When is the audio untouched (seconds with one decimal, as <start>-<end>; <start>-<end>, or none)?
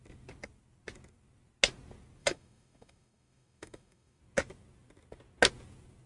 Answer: 0.0-2.2; 4.2-6.1